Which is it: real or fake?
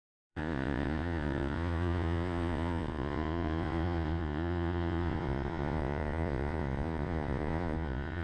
fake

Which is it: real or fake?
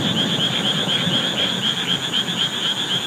real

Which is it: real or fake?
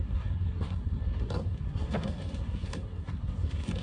fake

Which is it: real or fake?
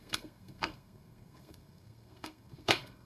fake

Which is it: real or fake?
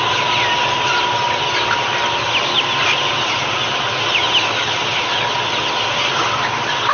real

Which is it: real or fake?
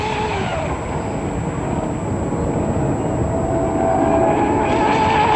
real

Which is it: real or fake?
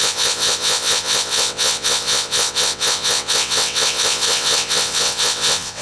fake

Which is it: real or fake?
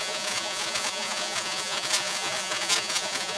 fake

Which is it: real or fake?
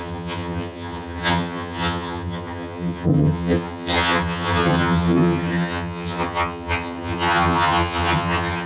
fake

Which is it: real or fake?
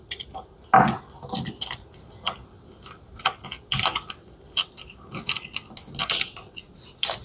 real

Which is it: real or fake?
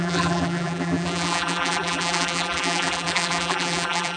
fake